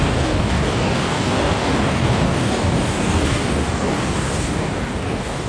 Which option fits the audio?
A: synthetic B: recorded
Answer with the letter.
A